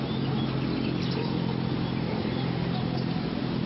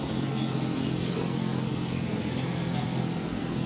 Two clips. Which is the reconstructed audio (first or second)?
second